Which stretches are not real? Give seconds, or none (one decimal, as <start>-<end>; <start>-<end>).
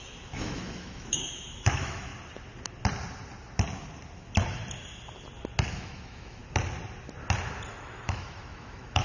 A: 0.0-2.1; 5.7-6.4; 7.7-9.0